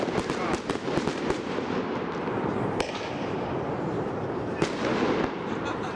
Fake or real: fake